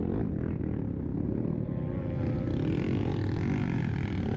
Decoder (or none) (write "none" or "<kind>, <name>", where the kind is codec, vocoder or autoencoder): none